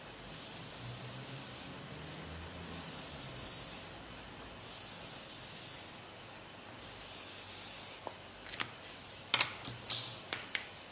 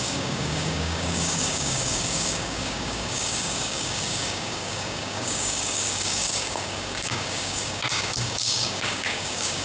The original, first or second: first